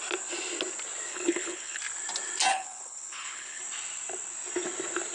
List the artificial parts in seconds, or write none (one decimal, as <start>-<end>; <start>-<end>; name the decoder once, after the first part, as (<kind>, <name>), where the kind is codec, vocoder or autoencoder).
1.1-1.8 (codec, HILCodec); 2.5-3.6